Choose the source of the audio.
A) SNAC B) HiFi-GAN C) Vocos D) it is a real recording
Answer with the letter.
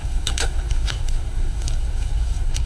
A